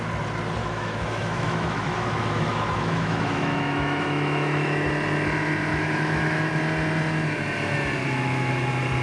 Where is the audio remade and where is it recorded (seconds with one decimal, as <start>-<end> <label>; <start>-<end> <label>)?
0.0-0.6 recorded; 0.6-4.9 remade; 4.9-5.7 recorded; 5.7-6.5 remade; 6.5-8.0 recorded; 8.0-8.5 remade; 8.5-9.0 recorded